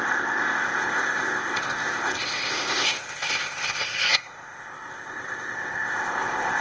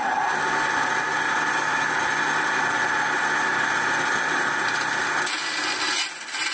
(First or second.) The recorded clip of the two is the second